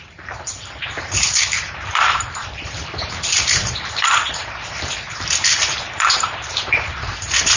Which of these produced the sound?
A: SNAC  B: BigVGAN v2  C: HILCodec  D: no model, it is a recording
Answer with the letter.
B